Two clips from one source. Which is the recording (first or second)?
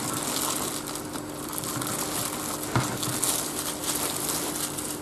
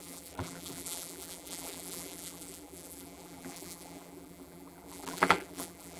first